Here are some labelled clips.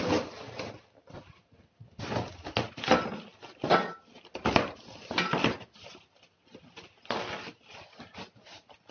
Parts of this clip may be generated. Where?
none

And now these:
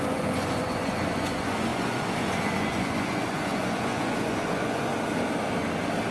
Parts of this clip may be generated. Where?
0.0-4.9 (vocoder, Vocos)

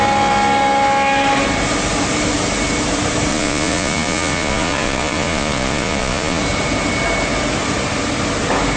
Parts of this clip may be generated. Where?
3.3-6.4 (vocoder, Vocos)

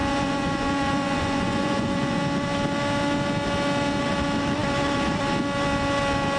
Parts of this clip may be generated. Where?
0.0-2.2 (vocoder, Vocos)

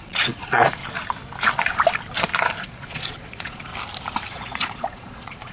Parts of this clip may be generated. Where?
0.0-0.8 (vocoder, Vocos); 2.6-3.7; 4.3-5.5